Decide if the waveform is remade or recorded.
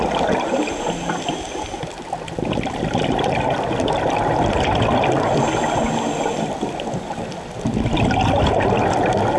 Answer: recorded